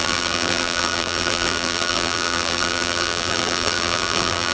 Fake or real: fake